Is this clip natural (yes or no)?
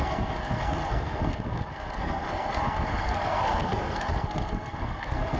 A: no